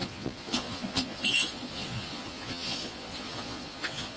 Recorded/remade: remade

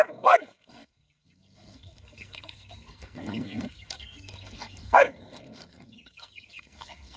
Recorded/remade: remade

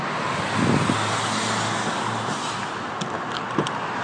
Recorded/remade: recorded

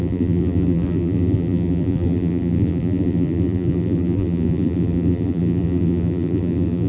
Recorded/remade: remade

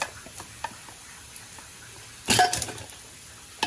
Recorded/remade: recorded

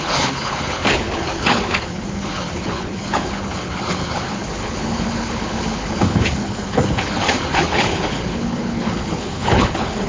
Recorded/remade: remade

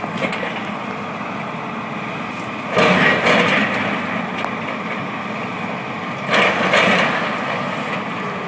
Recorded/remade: recorded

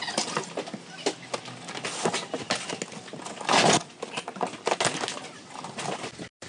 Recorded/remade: recorded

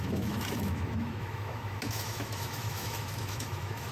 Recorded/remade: remade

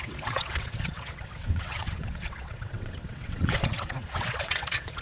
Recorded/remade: remade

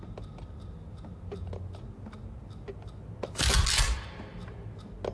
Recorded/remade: recorded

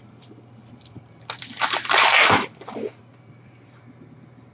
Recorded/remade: remade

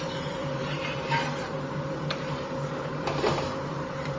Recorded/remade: remade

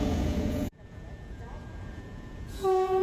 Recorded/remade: remade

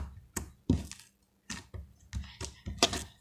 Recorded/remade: recorded